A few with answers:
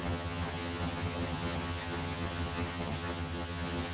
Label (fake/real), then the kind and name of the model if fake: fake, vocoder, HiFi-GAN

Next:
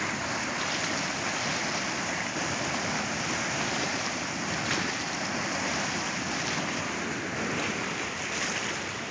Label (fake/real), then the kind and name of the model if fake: real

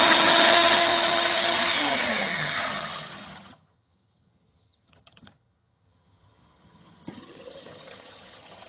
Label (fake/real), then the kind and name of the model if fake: fake, vocoder, HiFi-GAN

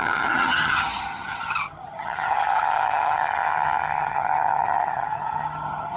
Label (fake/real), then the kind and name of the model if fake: fake, vocoder, HiFi-GAN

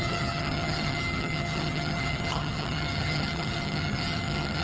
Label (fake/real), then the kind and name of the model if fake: fake, vocoder, HiFi-GAN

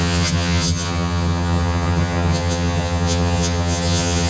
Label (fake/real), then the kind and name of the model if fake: fake, vocoder, HiFi-GAN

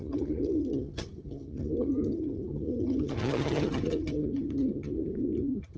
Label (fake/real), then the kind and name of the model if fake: fake, vocoder, HiFi-GAN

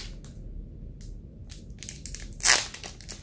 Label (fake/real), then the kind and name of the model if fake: real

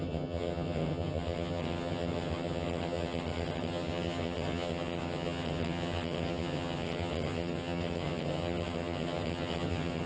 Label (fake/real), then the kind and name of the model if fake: fake, vocoder, HiFi-GAN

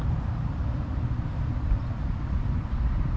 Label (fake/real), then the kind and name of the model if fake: real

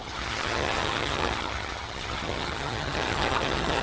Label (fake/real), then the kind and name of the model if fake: fake, vocoder, HiFi-GAN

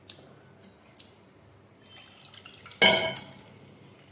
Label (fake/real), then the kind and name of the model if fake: real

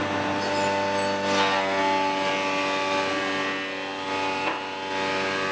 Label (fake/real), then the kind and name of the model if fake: real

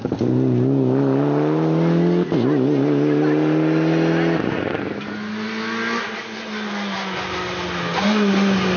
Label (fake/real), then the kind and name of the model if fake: real